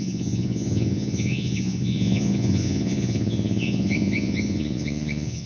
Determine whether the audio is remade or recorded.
remade